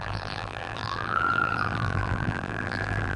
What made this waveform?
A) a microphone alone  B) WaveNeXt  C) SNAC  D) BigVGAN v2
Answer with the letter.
D